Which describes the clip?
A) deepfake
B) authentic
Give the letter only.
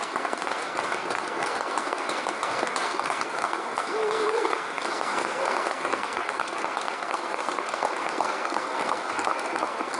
A